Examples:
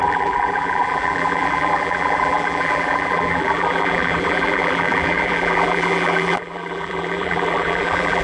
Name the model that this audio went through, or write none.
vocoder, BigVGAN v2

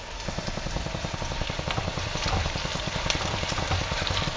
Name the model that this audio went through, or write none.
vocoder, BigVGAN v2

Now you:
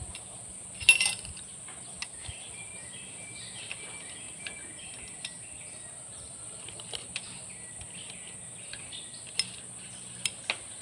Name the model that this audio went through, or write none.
none